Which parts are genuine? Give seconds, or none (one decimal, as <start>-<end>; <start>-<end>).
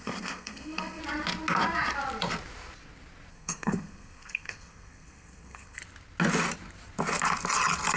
1.0-3.3; 5.8-8.0